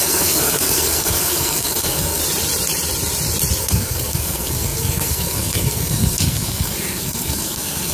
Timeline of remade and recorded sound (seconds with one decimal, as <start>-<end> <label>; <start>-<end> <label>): 0.0-2.2 remade; 2.2-3.6 recorded; 3.6-7.9 remade